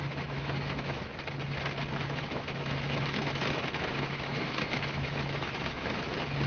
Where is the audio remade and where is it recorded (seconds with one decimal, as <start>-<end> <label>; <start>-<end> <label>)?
0.0-1.1 remade; 1.1-1.9 recorded; 1.9-6.5 remade